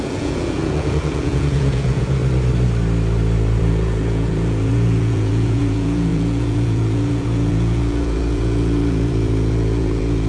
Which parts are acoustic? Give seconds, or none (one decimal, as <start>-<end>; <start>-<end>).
2.2-3.6